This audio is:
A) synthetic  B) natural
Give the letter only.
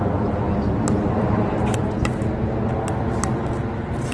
B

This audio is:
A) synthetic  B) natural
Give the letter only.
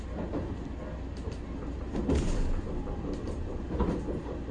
B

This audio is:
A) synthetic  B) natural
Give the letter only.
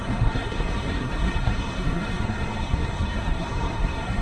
A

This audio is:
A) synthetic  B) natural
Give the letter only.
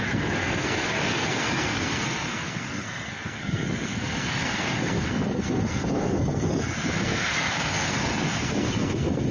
A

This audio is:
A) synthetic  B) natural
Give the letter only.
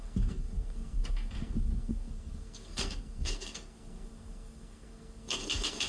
A